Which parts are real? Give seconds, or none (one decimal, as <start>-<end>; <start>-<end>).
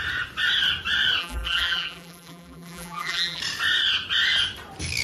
0.0-1.2; 3.4-5.0